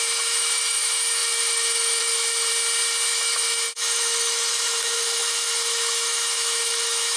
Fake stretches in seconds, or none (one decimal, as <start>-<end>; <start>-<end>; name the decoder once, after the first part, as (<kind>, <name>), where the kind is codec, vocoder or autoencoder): 0.0-2.5 (autoencoder, DAC-VAE); 3.1-7.2